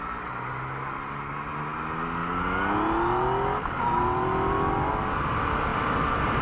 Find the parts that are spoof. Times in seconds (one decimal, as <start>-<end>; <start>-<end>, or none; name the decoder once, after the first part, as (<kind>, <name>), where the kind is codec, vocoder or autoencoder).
none